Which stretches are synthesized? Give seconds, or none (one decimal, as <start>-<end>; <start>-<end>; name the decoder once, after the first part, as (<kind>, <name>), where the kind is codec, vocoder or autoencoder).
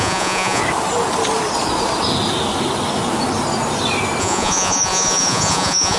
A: 0.0-0.6 (vocoder, Vocos); 4.2-6.0